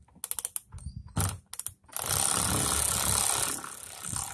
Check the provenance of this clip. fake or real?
real